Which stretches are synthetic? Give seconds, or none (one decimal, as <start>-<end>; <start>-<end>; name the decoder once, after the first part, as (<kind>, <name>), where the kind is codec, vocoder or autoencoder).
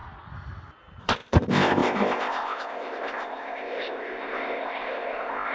1.0-5.5 (codec, ZipCodec)